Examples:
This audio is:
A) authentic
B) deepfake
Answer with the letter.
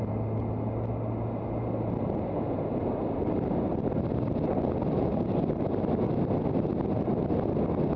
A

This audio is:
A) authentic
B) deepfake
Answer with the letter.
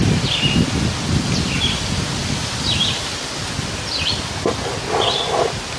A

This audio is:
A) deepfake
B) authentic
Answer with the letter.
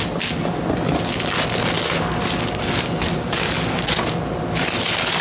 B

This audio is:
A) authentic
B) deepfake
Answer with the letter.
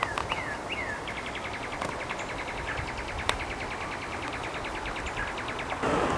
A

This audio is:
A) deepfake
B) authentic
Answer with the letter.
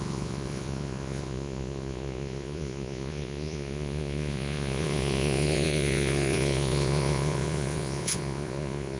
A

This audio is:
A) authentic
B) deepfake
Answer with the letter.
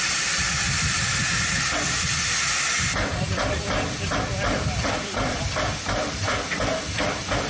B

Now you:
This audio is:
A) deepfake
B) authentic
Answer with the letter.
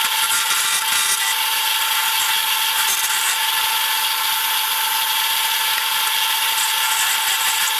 B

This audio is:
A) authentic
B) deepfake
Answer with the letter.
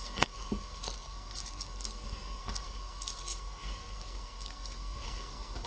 B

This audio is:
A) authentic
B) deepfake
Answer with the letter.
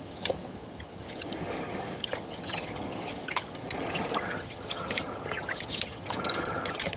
B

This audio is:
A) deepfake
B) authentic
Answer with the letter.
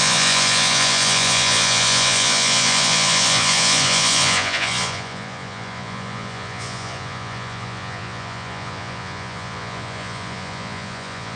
A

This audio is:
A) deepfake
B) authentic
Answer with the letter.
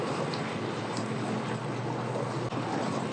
B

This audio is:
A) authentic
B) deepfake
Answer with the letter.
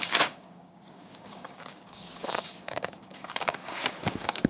B